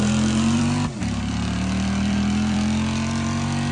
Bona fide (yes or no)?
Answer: no